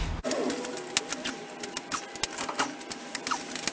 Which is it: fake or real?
real